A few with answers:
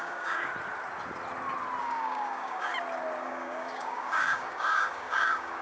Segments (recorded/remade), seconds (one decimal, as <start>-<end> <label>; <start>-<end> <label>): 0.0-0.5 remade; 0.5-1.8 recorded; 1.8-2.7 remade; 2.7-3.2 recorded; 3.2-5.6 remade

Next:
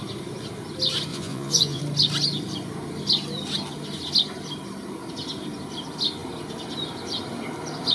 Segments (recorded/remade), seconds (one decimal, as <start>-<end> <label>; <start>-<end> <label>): 0.0-1.1 recorded; 1.1-1.8 remade; 1.8-7.9 recorded

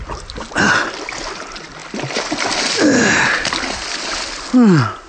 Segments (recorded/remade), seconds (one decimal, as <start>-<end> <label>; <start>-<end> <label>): 0.0-5.1 recorded